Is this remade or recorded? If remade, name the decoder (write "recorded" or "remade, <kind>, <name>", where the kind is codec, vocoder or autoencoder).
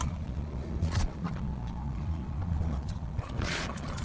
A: remade, vocoder, Vocos